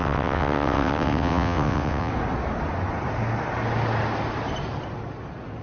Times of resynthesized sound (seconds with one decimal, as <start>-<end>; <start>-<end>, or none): 0.0-2.1